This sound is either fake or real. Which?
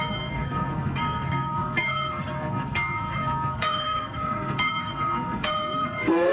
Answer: fake